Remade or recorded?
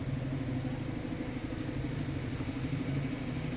recorded